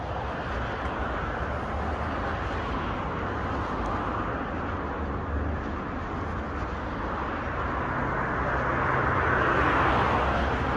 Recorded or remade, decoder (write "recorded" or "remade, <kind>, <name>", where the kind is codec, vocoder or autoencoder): recorded